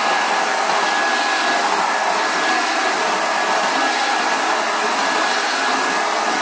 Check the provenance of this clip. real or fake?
real